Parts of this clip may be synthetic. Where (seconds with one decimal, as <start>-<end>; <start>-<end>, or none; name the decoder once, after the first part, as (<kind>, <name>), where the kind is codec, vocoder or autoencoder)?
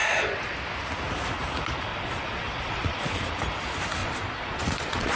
0.0-0.5 (vocoder, Vocos); 1.9-3.3; 4.0-5.2